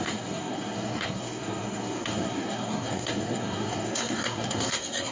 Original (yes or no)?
no